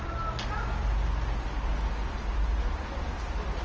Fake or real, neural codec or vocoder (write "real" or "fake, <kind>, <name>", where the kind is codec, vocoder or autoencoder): real